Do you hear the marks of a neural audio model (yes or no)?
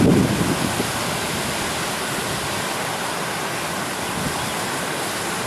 no